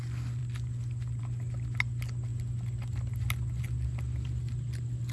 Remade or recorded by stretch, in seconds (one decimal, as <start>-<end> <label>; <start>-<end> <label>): 0.0-5.1 recorded

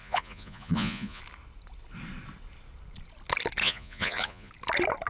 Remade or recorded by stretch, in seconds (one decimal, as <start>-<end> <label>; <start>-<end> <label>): 0.0-1.2 remade; 1.2-3.6 recorded; 3.6-4.5 remade; 4.5-5.1 recorded

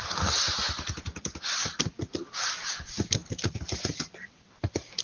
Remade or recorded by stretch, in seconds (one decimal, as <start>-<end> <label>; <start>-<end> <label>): 0.0-5.0 recorded

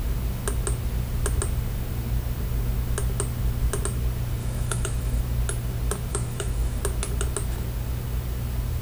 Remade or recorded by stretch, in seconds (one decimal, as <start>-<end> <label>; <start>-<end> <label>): 0.0-4.4 recorded; 4.4-5.2 remade; 5.2-6.1 recorded; 6.1-6.8 remade; 6.8-8.8 recorded

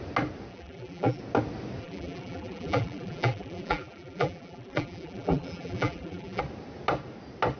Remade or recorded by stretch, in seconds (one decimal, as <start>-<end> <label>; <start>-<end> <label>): 0.0-0.5 recorded; 0.5-1.2 remade; 1.2-1.8 recorded; 1.8-6.4 remade; 6.4-7.6 recorded

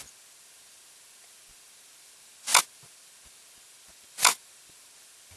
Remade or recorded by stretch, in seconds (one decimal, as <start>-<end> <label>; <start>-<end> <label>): 0.0-5.4 recorded

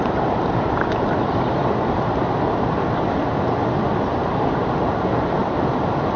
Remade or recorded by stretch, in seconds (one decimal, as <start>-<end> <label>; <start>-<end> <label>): 0.0-6.2 recorded

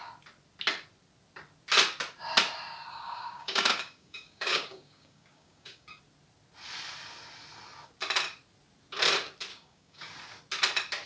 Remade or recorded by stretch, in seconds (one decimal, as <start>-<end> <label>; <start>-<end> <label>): 0.0-2.9 recorded; 2.9-6.0 remade; 6.0-9.5 recorded; 9.5-10.1 remade; 10.1-11.1 recorded